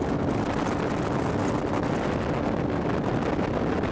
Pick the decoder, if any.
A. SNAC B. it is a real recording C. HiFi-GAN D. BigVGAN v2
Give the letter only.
B